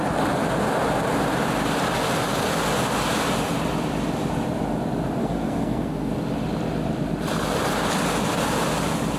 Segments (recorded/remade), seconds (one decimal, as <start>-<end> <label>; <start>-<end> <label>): 0.0-5.2 recorded; 5.2-6.1 remade; 6.1-9.2 recorded